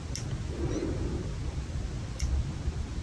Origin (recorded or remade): recorded